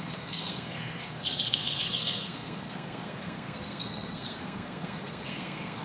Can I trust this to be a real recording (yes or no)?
no